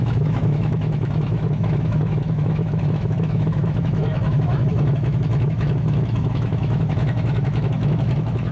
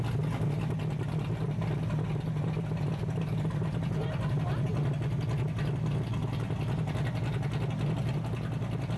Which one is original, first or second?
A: second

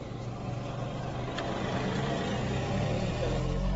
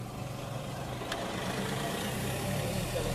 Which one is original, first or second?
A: first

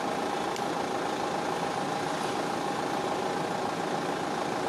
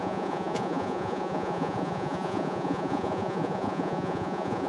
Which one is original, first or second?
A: first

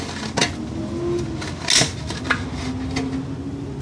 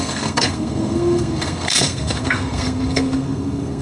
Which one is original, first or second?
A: first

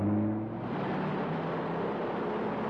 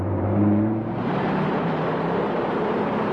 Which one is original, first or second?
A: first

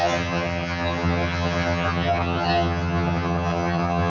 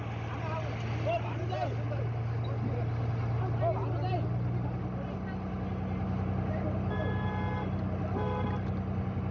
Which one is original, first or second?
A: second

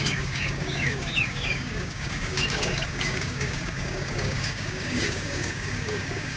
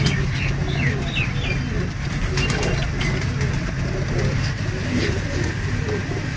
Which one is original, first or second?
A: second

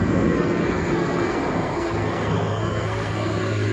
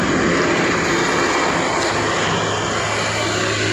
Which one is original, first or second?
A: second